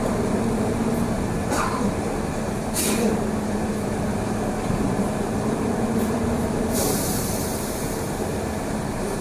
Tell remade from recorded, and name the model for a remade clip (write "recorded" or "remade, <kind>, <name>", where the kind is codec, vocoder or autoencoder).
remade, vocoder, BigVGAN v2